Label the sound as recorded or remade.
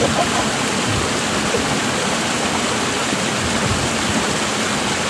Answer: recorded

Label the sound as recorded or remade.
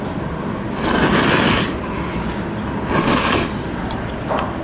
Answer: recorded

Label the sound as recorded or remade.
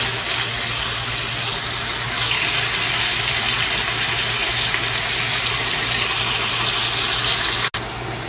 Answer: recorded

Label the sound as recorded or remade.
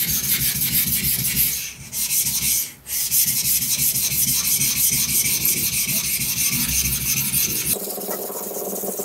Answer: recorded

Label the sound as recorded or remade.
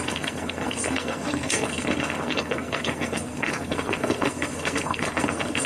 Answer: remade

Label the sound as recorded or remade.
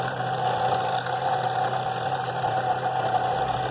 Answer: recorded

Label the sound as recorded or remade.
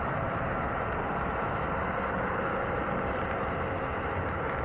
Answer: recorded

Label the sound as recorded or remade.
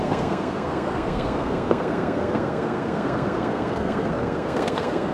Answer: remade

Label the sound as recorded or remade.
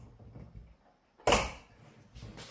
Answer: recorded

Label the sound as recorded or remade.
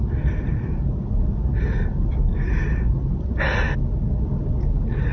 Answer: recorded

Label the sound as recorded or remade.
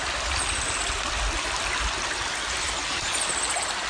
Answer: recorded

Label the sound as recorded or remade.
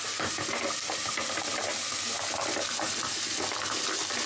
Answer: recorded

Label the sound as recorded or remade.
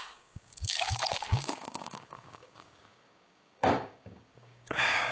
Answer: remade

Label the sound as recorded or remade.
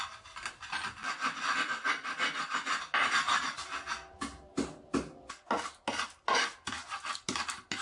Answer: recorded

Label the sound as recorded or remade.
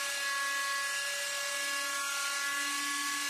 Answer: recorded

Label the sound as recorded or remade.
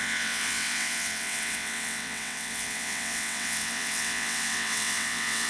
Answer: remade